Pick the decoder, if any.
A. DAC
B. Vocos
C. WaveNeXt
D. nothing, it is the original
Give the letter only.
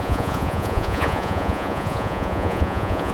B